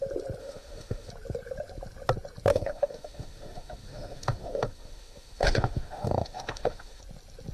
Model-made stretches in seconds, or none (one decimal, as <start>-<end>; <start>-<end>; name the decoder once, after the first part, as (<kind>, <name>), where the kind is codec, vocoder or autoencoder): 0.4-1.1 (autoencoder, DAC-VAE); 2.5-7.0